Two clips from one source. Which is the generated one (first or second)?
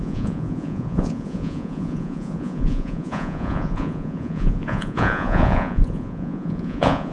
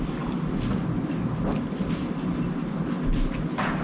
first